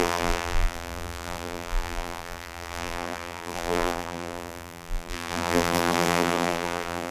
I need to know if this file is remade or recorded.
remade